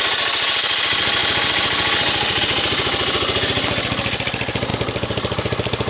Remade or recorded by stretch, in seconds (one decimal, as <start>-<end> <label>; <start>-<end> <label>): 0.0-5.9 recorded